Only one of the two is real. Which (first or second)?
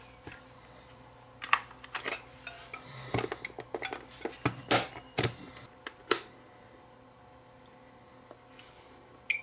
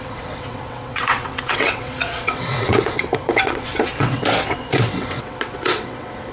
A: first